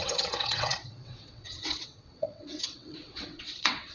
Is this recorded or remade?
remade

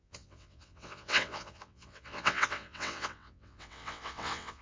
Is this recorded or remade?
remade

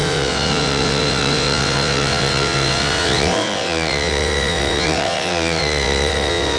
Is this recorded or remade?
remade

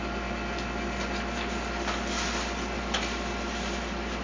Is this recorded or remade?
recorded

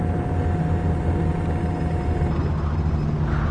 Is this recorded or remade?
recorded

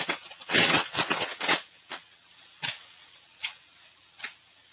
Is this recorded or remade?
remade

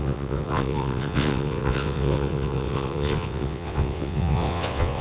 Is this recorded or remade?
remade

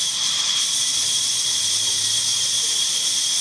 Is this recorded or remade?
recorded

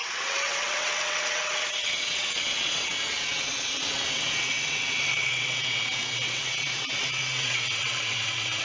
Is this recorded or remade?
remade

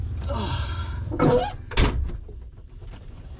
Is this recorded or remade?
recorded